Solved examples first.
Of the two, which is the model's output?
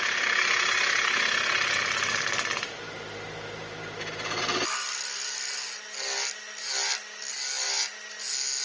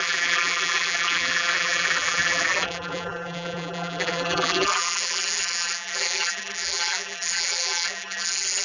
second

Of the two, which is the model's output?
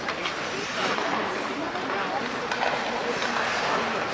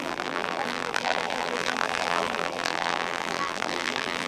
second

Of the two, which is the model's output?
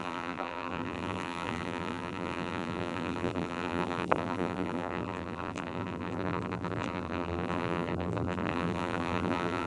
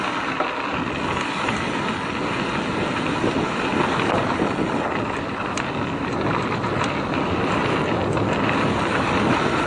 first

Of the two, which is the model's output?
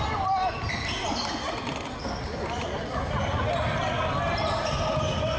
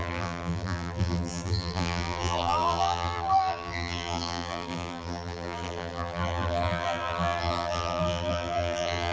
second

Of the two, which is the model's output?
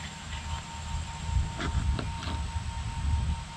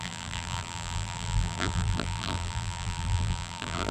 second